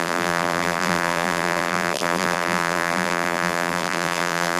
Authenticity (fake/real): fake